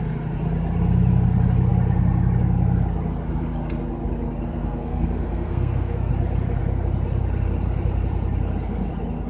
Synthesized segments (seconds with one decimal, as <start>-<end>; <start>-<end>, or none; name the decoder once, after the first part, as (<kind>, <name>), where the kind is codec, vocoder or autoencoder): 4.5-6.1 (codec, SNAC)